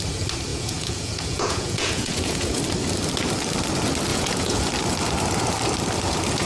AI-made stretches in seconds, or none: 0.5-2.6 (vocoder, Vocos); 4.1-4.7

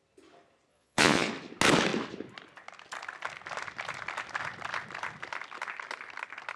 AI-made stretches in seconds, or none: 0.7-1.3 (vocoder, Vocos)